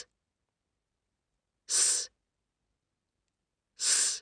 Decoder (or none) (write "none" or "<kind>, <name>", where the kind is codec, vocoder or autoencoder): none